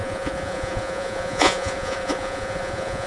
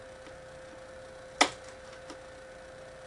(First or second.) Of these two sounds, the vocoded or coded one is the first